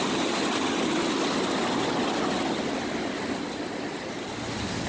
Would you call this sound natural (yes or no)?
yes